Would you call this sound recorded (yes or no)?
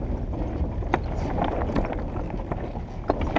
yes